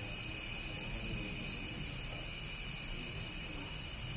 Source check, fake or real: real